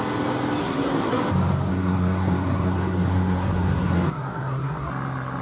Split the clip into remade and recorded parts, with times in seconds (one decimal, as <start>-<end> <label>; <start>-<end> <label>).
0.0-0.6 recorded; 0.6-1.2 remade; 1.2-1.7 recorded; 1.7-4.9 remade; 4.9-5.4 recorded